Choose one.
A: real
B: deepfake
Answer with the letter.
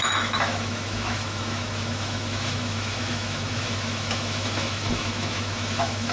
B